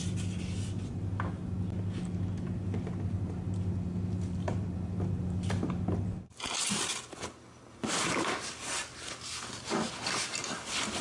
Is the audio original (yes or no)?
yes